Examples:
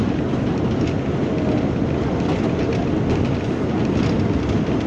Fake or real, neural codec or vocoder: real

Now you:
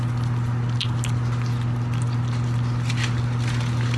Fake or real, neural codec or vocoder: real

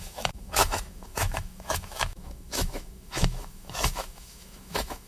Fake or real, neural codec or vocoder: fake, autoencoder, DAC-VAE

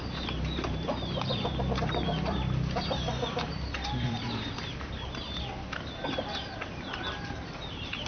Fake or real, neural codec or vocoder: fake, vocoder, BigVGAN v2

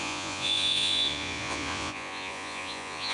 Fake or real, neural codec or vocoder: fake, vocoder, Vocos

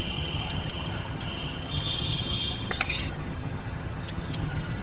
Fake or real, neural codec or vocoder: fake, vocoder, HiFi-GAN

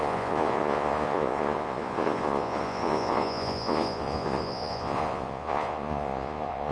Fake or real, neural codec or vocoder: fake, vocoder, Vocos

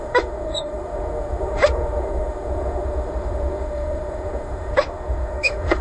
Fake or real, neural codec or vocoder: fake, autoencoder, DAC-VAE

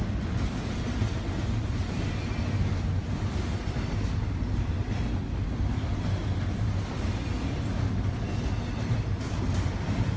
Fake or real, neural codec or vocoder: real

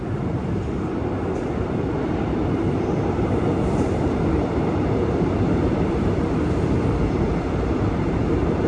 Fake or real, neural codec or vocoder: fake, vocoder, BigVGAN v2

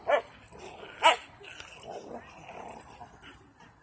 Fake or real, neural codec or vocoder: real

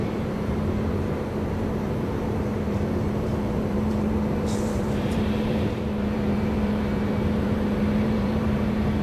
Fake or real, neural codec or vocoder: fake, vocoder, BigVGAN v2